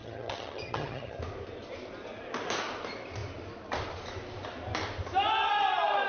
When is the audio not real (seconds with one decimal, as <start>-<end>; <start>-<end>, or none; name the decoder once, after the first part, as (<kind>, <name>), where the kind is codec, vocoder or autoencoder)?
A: 0.0-1.2 (vocoder, HiFi-GAN)